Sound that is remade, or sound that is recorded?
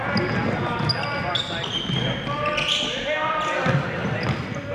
recorded